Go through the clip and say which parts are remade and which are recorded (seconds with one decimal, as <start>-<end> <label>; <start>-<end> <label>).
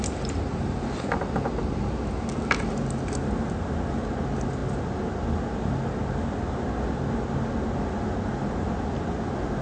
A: 0.0-9.6 recorded